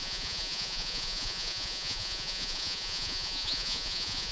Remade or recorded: remade